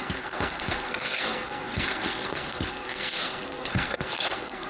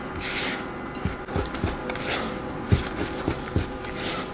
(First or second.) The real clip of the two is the second